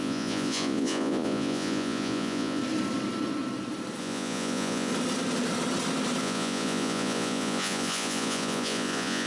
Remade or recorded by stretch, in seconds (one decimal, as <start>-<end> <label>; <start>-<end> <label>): 0.0-2.6 remade; 2.6-4.0 recorded; 4.0-4.9 remade; 4.9-6.2 recorded; 6.2-9.3 remade